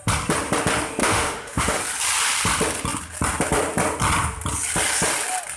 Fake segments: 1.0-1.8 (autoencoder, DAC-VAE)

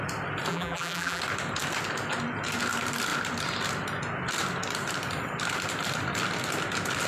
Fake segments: 0.5-1.2 (vocoder, BigVGAN v2)

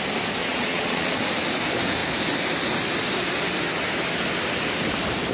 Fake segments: 0.4-1.1 (vocoder, Vocos)

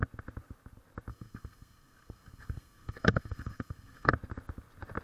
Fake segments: 1.1-4.1 (codec, SNAC)

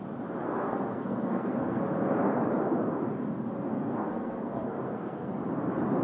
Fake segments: 0.4-1.8 (codec, SNAC); 3.7-5.3

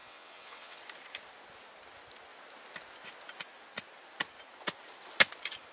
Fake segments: 0.0-0.8 (vocoder, WaveNeXt)

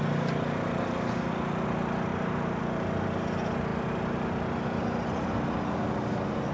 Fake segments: 2.1-2.6 (vocoder, BigVGAN v2)

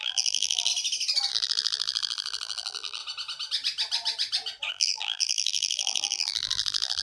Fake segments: 0.0-0.7 (vocoder, BigVGAN v2); 1.3-3.0; 4.7-7.0